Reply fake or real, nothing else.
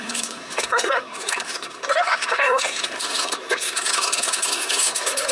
fake